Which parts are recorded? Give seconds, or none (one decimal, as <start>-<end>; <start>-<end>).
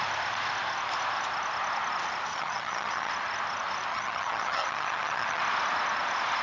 0.0-2.3; 3.1-3.9; 5.4-6.4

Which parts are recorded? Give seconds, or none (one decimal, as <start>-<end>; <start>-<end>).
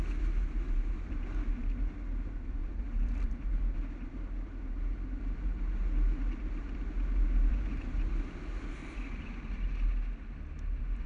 0.0-2.6; 3.6-7.5; 8.1-11.1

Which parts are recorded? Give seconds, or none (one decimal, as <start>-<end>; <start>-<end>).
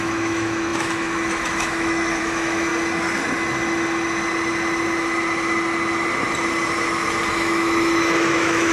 2.7-7.3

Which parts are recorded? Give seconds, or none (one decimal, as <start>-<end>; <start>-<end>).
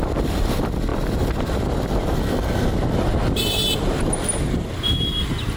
none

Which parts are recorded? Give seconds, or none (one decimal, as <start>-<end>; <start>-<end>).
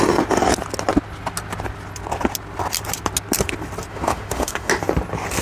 0.0-3.9; 4.7-5.4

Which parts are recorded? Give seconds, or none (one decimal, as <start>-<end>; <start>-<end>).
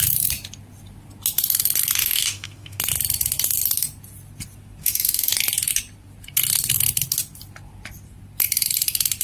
0.0-2.0; 2.8-4.8; 5.3-9.2